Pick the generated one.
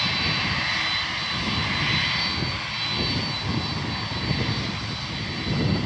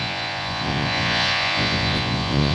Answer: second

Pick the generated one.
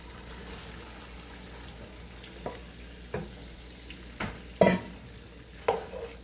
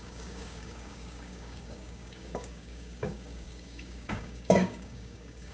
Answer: second